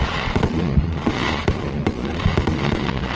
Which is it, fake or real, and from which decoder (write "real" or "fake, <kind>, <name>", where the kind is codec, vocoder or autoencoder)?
fake, vocoder, Vocos